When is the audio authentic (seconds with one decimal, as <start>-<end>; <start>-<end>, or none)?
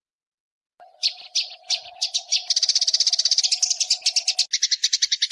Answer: 0.0-5.3